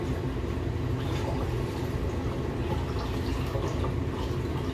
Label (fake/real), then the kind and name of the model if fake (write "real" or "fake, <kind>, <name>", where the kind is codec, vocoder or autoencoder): real